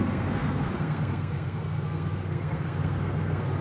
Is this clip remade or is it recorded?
remade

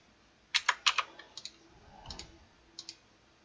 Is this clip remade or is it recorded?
recorded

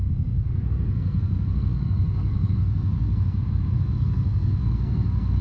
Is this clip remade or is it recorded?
remade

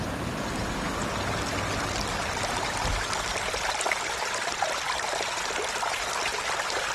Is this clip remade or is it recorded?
recorded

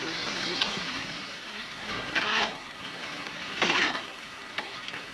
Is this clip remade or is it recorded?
remade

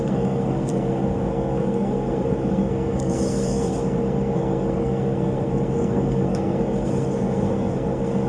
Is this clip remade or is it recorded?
remade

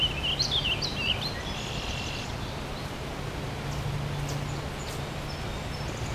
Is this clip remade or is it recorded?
recorded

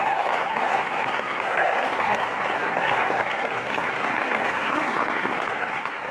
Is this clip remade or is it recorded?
remade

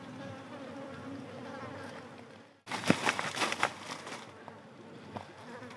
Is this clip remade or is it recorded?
recorded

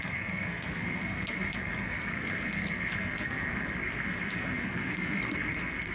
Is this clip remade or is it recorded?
remade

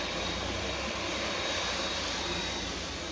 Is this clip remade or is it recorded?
recorded